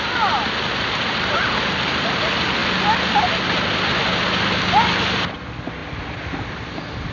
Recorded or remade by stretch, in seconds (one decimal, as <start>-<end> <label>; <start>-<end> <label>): 0.0-7.1 recorded